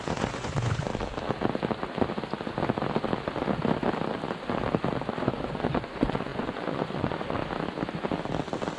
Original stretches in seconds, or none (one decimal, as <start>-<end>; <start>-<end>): 0.9-5.1; 7.4-8.8